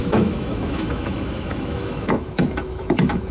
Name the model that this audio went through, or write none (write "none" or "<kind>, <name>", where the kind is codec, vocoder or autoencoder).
autoencoder, DAC-VAE